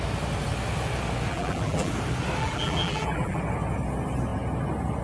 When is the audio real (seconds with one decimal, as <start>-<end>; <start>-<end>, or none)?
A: 0.0-1.3; 1.9-2.4; 3.4-5.0